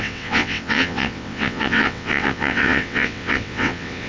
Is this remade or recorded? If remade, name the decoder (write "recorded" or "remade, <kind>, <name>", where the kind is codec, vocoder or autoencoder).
remade, vocoder, WaveNeXt